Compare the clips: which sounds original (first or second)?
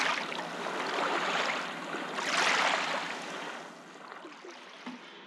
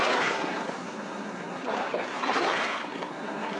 first